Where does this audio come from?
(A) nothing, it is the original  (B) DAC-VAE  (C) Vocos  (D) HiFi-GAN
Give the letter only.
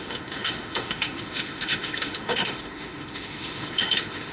B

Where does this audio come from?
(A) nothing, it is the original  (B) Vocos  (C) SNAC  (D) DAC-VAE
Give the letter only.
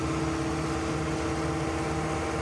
A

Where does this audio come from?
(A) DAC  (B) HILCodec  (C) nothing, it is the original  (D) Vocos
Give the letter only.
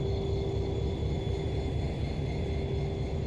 C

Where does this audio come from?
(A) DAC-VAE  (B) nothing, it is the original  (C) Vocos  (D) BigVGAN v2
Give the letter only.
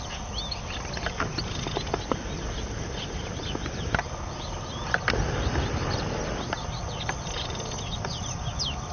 B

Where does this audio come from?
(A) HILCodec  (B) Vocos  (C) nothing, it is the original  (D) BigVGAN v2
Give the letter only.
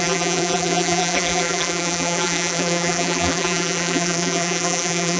D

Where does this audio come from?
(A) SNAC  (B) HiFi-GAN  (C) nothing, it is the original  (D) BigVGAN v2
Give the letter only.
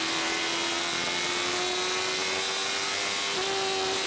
C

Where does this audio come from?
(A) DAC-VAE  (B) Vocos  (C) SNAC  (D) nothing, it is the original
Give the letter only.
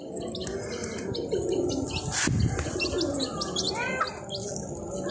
D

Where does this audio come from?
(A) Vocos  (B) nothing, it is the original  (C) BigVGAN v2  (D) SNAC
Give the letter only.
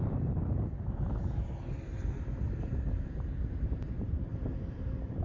C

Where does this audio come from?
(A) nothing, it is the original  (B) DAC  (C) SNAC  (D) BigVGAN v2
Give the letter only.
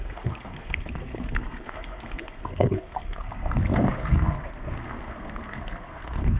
C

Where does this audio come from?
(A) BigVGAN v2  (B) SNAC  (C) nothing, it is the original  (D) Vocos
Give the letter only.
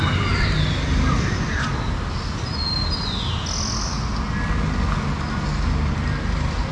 C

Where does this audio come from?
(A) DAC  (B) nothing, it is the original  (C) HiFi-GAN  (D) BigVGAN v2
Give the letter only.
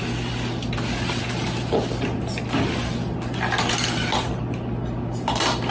B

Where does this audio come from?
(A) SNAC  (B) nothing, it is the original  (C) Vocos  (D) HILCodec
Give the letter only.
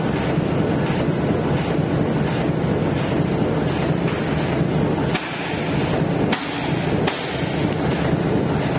B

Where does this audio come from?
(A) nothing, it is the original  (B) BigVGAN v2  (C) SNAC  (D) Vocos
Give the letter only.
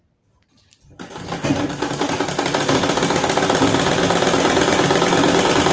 A